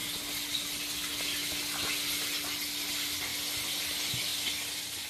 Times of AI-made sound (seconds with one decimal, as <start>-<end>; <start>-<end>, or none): 2.9-3.3; 3.8-5.1